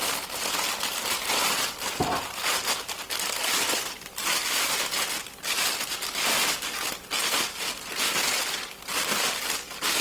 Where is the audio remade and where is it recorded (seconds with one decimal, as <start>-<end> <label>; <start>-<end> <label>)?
0.0-10.0 recorded

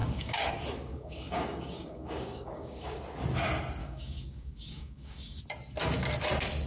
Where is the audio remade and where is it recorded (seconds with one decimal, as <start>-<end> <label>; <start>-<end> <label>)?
0.0-0.5 remade; 0.5-0.9 recorded; 0.9-3.0 remade; 3.0-3.8 recorded; 3.8-5.4 remade; 5.4-6.7 recorded

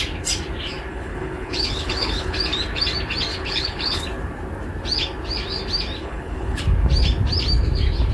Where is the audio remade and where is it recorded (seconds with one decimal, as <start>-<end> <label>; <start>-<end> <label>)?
0.0-0.9 recorded; 0.9-2.4 remade; 2.4-3.3 recorded; 3.3-4.0 remade; 4.0-6.0 recorded; 6.0-6.6 remade; 6.6-8.1 recorded

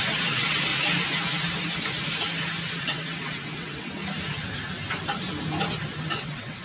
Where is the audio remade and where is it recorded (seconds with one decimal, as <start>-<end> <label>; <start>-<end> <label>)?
0.0-0.7 remade; 0.7-2.7 recorded; 2.7-4.0 remade; 4.0-6.1 recorded; 6.1-6.6 remade

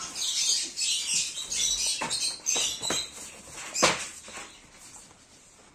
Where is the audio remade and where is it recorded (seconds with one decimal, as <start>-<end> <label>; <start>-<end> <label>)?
0.0-5.7 recorded